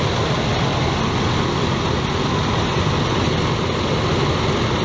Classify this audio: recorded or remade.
recorded